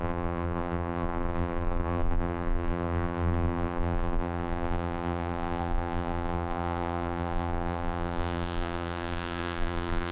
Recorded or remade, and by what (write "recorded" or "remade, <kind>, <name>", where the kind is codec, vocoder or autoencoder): remade, vocoder, BigVGAN v2